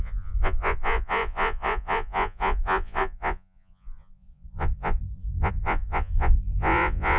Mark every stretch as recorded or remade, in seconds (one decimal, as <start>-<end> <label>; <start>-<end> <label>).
0.0-7.2 remade